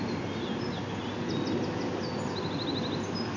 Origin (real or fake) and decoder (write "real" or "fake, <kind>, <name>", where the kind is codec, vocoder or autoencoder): real